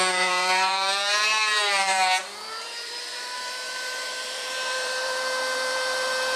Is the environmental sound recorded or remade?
remade